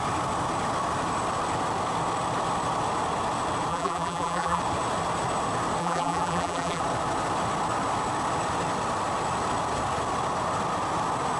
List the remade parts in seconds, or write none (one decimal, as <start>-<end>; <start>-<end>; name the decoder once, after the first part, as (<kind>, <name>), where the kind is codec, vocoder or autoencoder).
3.7-4.6 (vocoder, BigVGAN v2); 5.8-6.8